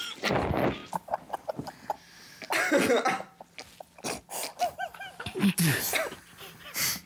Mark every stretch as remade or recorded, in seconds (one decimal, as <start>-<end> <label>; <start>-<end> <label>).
0.0-7.1 recorded